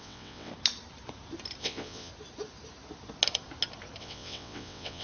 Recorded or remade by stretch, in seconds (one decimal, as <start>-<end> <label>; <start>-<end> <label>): 0.0-0.5 remade; 0.5-1.6 recorded; 1.6-2.1 remade; 2.1-4.0 recorded; 4.0-5.0 remade

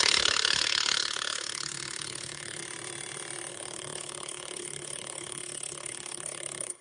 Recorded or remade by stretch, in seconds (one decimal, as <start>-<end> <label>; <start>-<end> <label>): 0.0-2.6 remade; 2.6-3.5 recorded; 3.5-6.8 remade

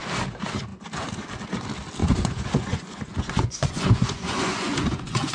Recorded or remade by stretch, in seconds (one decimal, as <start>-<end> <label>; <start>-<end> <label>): 0.0-2.0 recorded; 2.0-5.3 remade

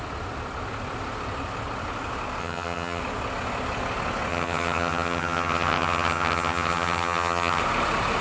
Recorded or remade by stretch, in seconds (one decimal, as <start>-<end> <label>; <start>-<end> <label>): 0.0-2.4 recorded; 2.4-3.0 remade; 3.0-4.3 recorded; 4.3-7.6 remade; 7.6-8.2 recorded

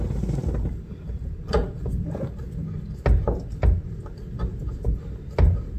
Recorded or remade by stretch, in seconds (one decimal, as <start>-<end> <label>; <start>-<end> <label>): 0.0-5.8 recorded

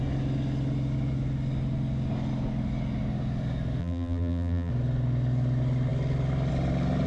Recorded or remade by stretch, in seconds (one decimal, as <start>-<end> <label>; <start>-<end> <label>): 0.0-3.8 recorded; 3.8-4.7 remade; 4.7-7.1 recorded

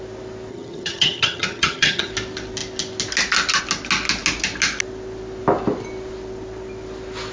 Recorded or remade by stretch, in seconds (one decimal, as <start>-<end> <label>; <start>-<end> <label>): 0.0-0.5 recorded; 0.5-2.1 remade; 2.1-7.3 recorded